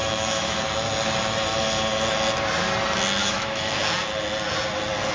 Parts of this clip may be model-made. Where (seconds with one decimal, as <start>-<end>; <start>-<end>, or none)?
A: 0.0-0.6; 3.2-3.8